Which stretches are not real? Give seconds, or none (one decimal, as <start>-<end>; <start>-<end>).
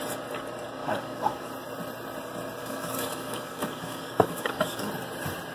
0.8-1.5; 2.6-4.9